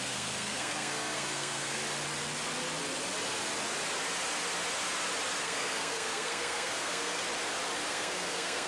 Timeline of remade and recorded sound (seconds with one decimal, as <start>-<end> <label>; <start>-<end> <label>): 0.0-1.8 remade; 1.8-5.4 recorded; 5.4-7.2 remade; 7.2-7.9 recorded; 7.9-8.7 remade